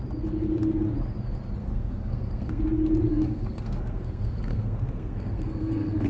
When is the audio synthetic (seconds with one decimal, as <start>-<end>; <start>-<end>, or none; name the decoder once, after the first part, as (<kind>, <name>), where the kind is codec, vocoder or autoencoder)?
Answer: 1.6-2.6 (codec, SNAC); 3.1-6.1